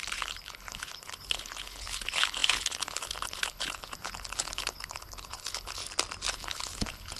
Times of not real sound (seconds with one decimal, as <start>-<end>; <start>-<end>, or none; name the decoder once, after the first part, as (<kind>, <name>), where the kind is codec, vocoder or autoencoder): 0.0-5.8 (codec, HILCodec); 6.3-7.2